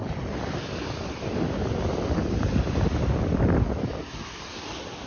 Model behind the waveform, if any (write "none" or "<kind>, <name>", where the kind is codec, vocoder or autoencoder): none